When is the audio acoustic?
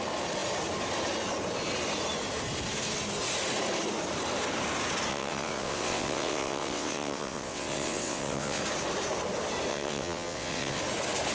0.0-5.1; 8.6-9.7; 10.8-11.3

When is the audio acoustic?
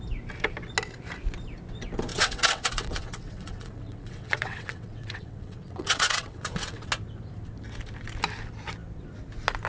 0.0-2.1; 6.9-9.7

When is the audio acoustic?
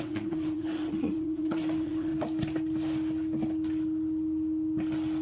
2.1-5.2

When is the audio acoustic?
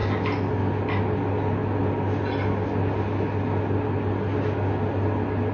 0.0-5.5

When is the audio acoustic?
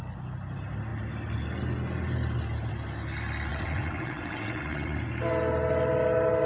0.0-3.5; 5.0-6.5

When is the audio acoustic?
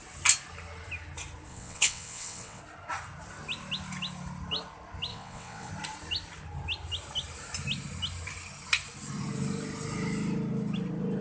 0.0-1.5; 2.6-5.1; 5.7-11.2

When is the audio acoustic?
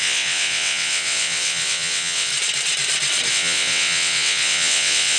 2.3-3.3